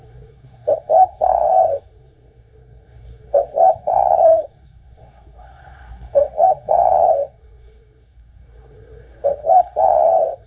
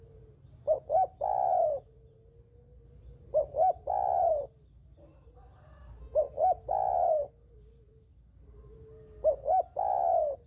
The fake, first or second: first